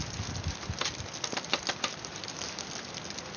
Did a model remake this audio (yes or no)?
no